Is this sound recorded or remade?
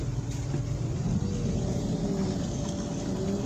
recorded